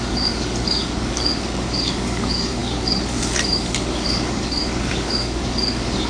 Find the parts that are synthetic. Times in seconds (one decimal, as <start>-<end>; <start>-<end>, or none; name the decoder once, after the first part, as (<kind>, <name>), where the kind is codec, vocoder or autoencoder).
0.0-6.1 (codec, DAC)